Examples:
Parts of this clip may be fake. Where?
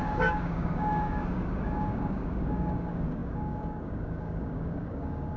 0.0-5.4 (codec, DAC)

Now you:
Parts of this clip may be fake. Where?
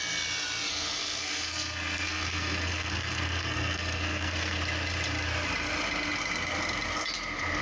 0.7-4.6 (codec, SNAC)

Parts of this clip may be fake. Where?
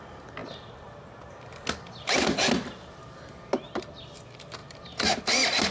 4.6-5.2 (vocoder, BigVGAN v2)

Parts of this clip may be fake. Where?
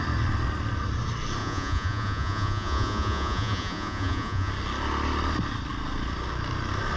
1.4-4.5 (vocoder, Vocos)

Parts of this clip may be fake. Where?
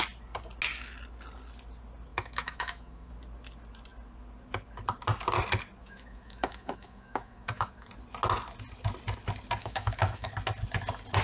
2.1-3.1 (autoencoder, DAC-VAE); 5.8-7.9; 9.6-10.3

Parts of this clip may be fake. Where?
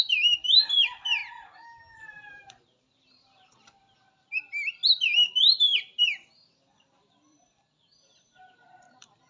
0.0-1.2 (vocoder, BigVGAN v2); 2.0-4.8; 7.0-9.3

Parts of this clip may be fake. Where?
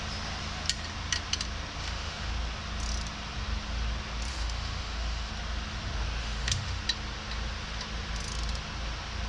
1.8-2.3 (autoencoder, DAC-VAE); 4.3-5.3; 6.2-6.8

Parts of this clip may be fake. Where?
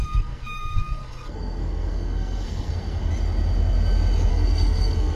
0.0-3.1 (codec, SNAC); 4.3-5.2